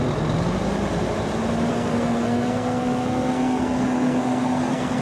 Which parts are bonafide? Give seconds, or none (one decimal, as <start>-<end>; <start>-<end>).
0.0-1.7